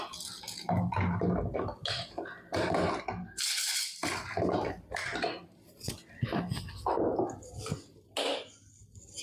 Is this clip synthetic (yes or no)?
no